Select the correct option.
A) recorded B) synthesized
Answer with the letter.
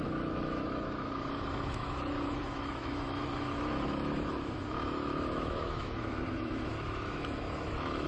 B